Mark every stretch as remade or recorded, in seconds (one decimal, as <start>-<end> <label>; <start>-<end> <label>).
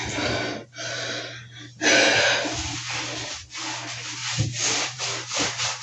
0.0-4.2 recorded; 4.2-5.0 remade; 5.0-5.8 recorded